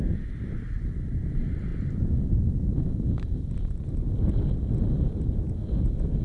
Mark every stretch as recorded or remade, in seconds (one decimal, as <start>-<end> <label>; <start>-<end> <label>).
0.0-6.2 recorded